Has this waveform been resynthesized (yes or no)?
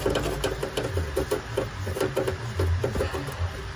no